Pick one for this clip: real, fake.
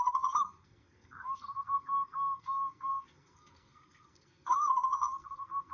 fake